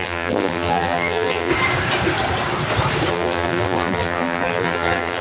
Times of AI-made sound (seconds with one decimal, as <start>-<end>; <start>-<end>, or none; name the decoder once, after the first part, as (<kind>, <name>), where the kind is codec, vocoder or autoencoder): 0.0-1.5 (vocoder, BigVGAN v2); 3.1-5.2